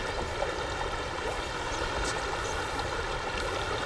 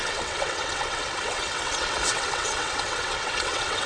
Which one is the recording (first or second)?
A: first